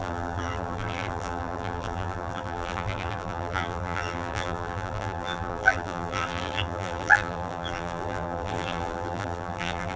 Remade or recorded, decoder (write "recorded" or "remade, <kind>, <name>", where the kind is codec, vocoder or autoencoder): remade, vocoder, BigVGAN v2